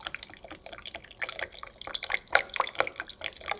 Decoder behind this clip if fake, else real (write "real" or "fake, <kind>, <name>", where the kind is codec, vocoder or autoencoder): real